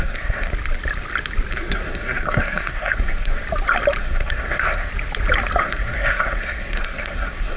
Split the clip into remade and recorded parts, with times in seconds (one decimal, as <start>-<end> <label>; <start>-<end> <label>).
0.0-0.5 remade; 0.5-1.5 recorded; 1.5-3.4 remade; 3.4-4.0 recorded; 4.0-4.9 remade; 4.9-5.6 recorded; 5.6-7.6 remade